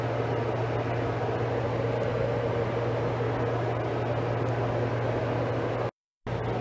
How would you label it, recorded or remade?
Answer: recorded